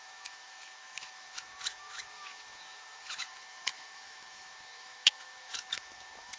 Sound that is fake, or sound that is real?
fake